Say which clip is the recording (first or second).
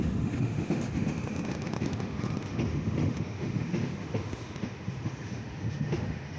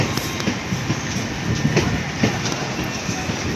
second